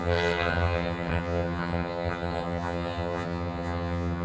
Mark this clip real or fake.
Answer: fake